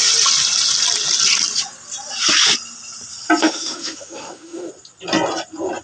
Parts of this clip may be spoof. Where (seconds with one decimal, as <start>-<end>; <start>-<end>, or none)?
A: 3.4-4.7

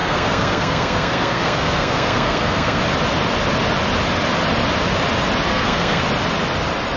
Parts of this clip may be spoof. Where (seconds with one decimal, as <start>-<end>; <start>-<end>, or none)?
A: 0.0-2.8; 5.5-6.0

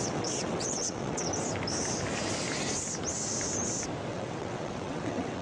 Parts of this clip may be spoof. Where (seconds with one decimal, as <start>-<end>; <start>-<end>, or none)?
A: 0.0-1.3; 4.1-5.4

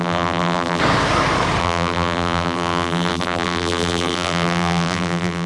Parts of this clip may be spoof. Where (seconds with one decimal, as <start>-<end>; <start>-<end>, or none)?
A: 0.0-0.8; 1.6-5.5